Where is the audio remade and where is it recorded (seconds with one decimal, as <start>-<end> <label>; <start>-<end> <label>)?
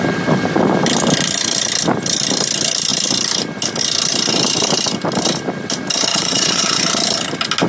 0.0-6.1 recorded; 6.1-6.8 remade; 6.8-7.7 recorded